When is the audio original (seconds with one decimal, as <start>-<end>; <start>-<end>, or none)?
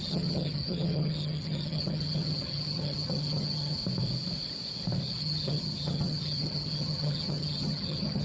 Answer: 3.8-5.2